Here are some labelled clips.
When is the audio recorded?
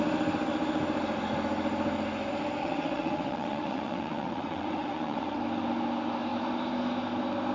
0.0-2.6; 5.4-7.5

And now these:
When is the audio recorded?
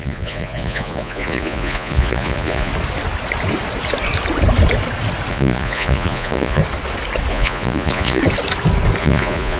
2.7-5.3; 6.6-7.3; 8.2-9.0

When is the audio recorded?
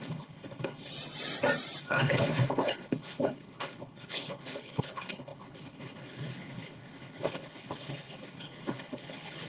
0.9-1.8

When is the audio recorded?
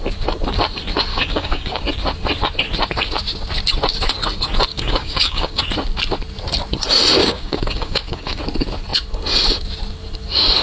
0.0-1.1; 1.8-4.7; 5.6-7.2; 8.4-10.6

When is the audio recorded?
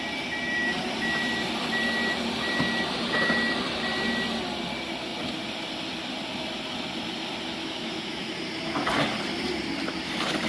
0.0-7.6; 8.3-10.5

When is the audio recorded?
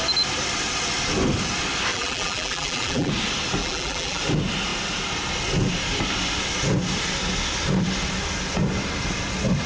0.0-1.9; 3.1-3.6; 4.2-9.7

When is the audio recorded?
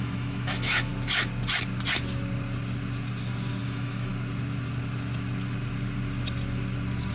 0.9-3.6; 4.1-7.1